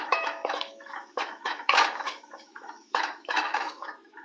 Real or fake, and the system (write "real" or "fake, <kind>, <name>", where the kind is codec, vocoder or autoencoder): fake, autoencoder, DAC-VAE